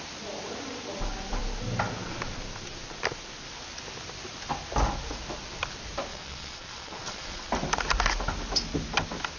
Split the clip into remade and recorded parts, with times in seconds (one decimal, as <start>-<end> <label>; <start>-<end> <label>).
0.0-6.1 recorded; 6.1-7.5 remade; 7.5-9.4 recorded